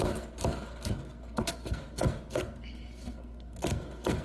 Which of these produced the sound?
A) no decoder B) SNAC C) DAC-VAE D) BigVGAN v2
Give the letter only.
B